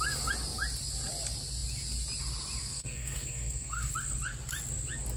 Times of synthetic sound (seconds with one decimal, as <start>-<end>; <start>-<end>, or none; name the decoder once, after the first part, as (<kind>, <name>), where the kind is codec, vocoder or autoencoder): 2.6-3.9 (codec, SNAC)